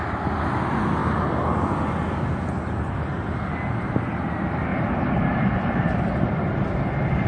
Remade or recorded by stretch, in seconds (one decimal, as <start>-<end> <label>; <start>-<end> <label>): 0.0-4.7 recorded; 4.7-6.7 remade; 6.7-7.3 recorded